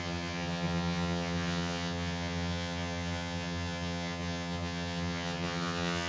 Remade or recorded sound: remade